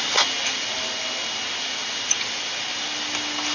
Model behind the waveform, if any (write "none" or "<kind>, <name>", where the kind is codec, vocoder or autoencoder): none